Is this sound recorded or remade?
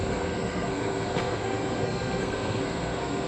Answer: remade